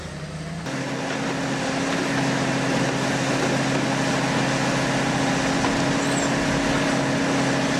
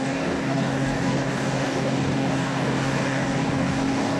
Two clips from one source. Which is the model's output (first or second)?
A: second